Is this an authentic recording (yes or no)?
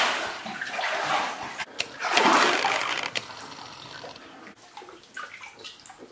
yes